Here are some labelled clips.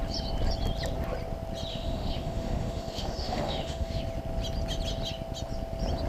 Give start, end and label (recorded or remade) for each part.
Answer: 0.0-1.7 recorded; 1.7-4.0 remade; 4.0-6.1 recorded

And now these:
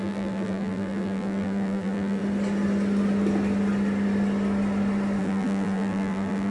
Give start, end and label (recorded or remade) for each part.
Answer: 0.0-2.2 remade; 2.2-5.2 recorded; 5.2-6.5 remade

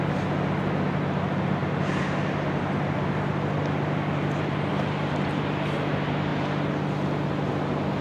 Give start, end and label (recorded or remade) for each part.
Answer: 0.0-1.6 recorded; 1.6-4.7 remade; 4.7-8.0 recorded

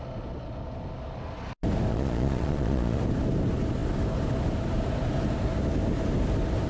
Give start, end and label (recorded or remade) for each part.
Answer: 0.0-1.9 recorded; 1.9-3.0 remade; 3.0-6.7 recorded

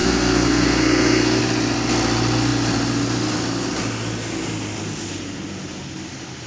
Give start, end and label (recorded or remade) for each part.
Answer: 0.0-1.4 remade; 1.4-6.5 recorded

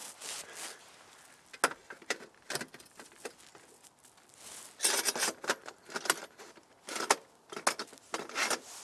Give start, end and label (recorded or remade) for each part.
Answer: 0.0-8.8 recorded

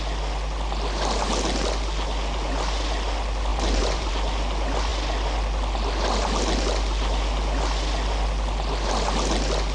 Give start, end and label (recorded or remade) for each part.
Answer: 0.0-3.5 recorded; 3.5-4.1 remade; 4.1-9.7 recorded